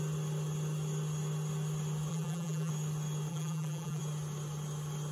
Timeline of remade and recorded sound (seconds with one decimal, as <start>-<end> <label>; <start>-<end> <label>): 0.0-2.1 recorded; 2.1-2.7 remade; 2.7-3.3 recorded; 3.3-4.0 remade; 4.0-5.1 recorded